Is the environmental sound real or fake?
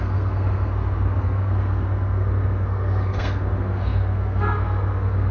fake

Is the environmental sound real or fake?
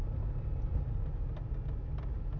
real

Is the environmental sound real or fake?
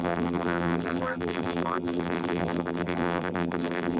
fake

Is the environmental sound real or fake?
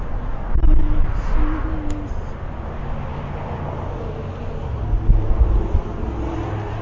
real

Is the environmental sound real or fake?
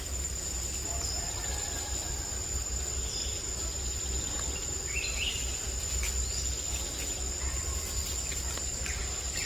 real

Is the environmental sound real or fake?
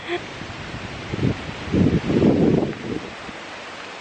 real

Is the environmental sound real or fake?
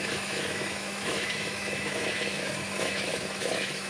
fake